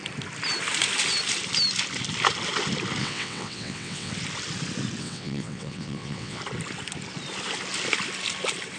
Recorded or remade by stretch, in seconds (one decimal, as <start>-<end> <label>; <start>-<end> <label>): 0.0-3.0 recorded; 3.0-4.1 remade; 4.1-5.0 recorded; 5.0-6.4 remade; 6.4-8.8 recorded